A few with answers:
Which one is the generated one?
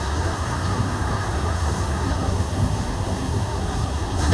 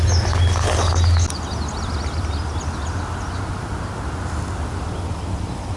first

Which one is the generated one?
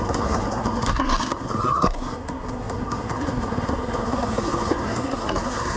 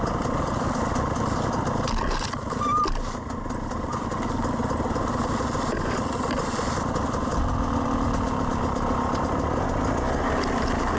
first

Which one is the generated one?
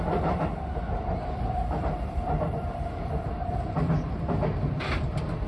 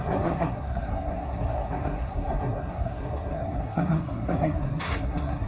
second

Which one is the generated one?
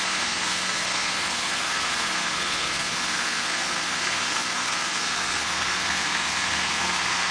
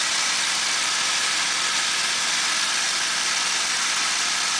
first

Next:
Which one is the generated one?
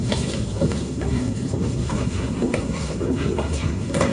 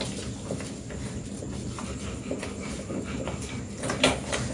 first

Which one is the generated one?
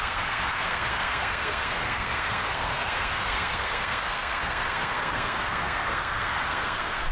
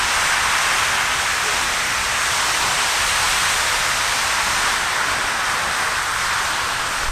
first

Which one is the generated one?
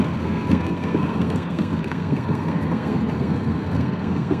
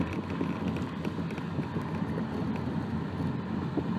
first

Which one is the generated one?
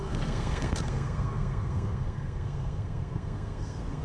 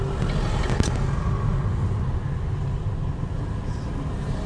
first